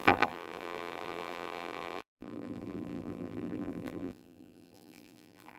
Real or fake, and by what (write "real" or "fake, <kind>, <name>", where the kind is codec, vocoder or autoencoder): fake, vocoder, BigVGAN v2